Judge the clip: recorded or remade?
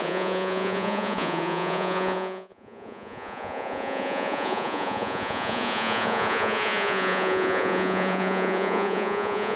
remade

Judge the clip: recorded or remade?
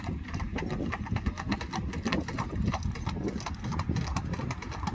recorded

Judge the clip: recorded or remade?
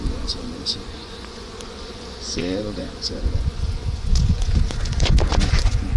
remade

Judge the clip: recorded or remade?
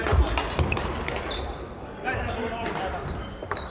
recorded